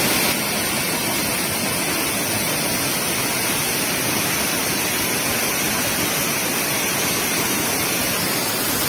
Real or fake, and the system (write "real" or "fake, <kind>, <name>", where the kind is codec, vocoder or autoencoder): real